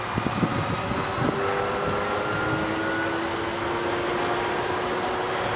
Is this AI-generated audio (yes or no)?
no